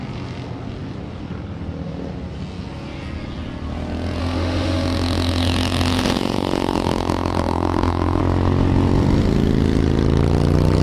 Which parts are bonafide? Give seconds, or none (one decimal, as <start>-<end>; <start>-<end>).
0.0-4.2; 8.2-10.8